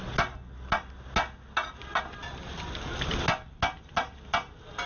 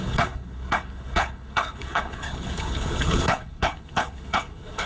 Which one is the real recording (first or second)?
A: first